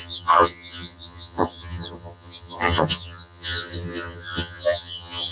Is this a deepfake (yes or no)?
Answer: yes